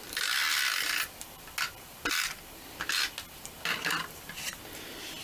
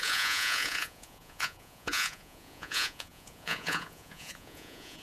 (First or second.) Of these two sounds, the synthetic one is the second